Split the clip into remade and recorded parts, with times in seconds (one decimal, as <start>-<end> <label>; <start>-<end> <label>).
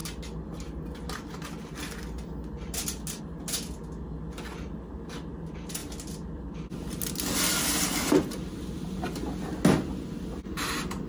0.0-11.1 recorded